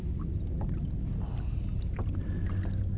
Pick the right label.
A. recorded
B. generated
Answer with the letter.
A